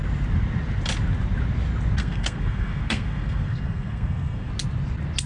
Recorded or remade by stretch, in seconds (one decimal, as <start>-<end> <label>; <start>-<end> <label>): 0.0-2.0 recorded; 2.0-4.5 remade; 4.5-5.3 recorded